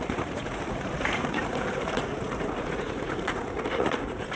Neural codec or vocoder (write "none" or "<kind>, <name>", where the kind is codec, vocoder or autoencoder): vocoder, Vocos